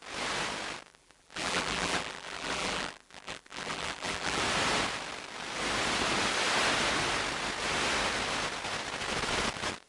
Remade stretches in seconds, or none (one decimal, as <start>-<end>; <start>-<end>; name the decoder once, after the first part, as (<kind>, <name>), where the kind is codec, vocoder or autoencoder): 0.9-4.4 (vocoder, BigVGAN v2)